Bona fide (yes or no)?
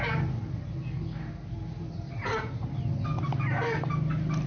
yes